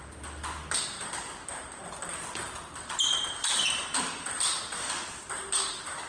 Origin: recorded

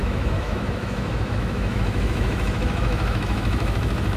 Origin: remade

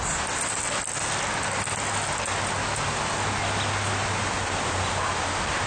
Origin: recorded